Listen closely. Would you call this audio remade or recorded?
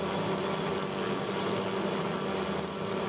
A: recorded